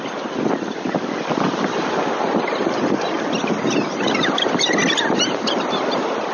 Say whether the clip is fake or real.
real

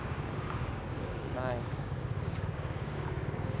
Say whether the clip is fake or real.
fake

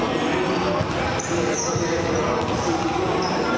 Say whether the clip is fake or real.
real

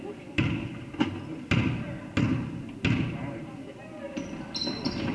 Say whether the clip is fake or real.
real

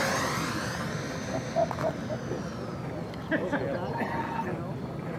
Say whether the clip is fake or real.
real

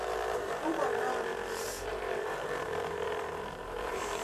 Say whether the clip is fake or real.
fake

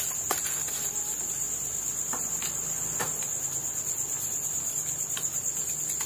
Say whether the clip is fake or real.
real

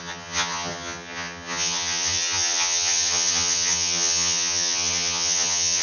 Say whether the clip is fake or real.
fake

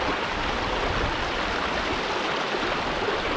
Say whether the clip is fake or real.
real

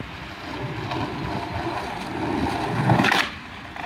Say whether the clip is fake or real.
real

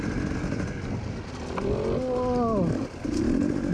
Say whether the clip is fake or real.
real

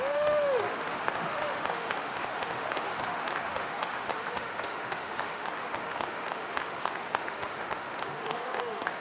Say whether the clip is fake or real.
fake